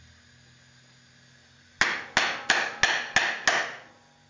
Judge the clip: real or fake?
real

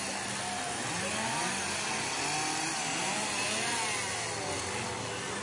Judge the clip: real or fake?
real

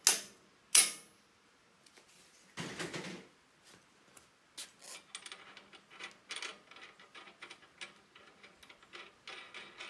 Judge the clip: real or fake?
real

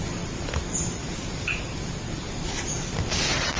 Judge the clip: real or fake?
real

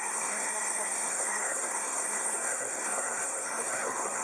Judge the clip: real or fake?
fake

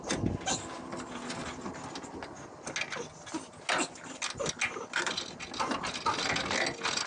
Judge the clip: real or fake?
real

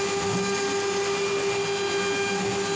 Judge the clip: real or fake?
real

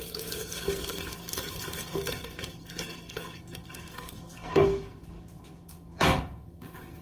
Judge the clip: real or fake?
fake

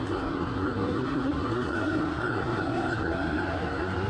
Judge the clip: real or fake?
fake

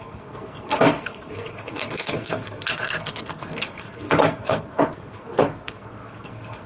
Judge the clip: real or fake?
fake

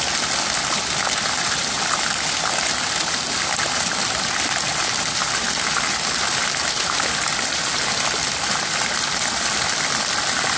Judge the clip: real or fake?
real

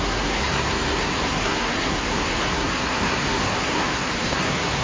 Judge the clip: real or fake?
fake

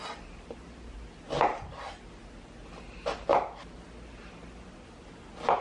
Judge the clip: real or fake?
real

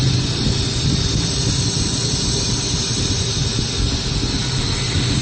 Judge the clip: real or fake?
real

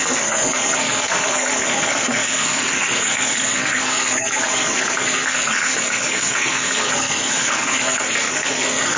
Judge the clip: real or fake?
fake